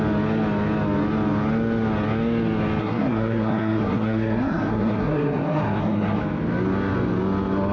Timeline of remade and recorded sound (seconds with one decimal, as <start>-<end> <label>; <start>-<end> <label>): 0.0-2.8 recorded; 2.8-6.2 remade; 6.2-7.7 recorded